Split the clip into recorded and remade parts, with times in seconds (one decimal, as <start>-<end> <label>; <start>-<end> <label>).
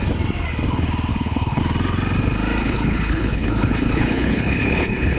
0.0-1.1 recorded; 1.1-1.6 remade; 1.6-2.6 recorded; 2.6-5.2 remade